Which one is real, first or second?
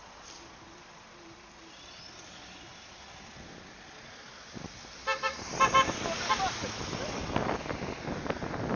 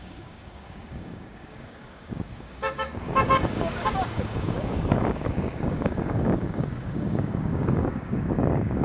first